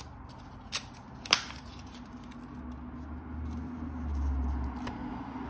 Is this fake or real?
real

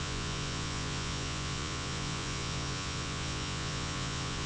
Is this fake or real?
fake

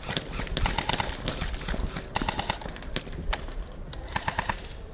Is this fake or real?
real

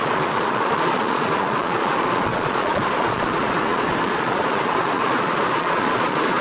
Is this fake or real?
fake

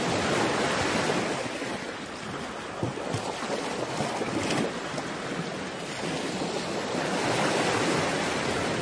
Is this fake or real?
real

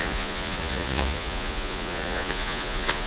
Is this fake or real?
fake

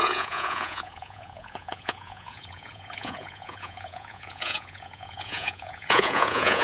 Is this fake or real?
fake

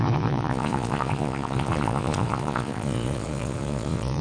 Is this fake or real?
fake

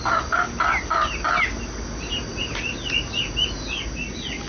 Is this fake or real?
real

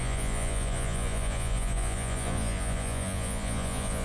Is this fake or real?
fake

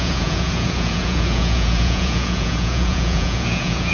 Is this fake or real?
fake